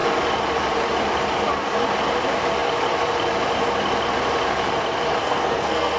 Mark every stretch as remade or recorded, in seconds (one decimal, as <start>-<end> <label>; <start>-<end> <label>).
0.0-5.2 recorded; 5.2-6.0 remade